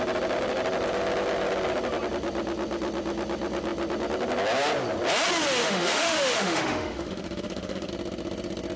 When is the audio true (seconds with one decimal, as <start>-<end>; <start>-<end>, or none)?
0.0-5.6; 7.9-8.8